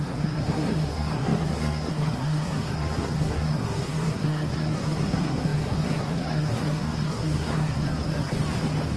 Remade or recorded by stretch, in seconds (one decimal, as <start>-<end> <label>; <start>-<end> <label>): 0.0-8.4 remade; 8.4-9.0 recorded